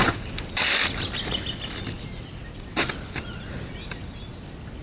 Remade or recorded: recorded